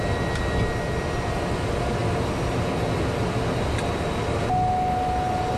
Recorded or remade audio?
recorded